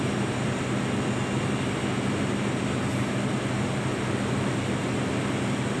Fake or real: real